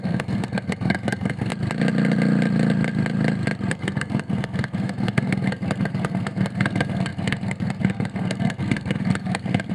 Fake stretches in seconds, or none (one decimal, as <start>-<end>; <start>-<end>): 0.0-1.5; 3.7-9.7